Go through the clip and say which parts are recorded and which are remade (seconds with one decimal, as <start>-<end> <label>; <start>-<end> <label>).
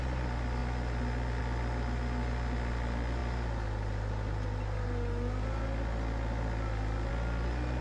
0.0-0.6 recorded; 0.6-1.4 remade; 1.4-7.8 recorded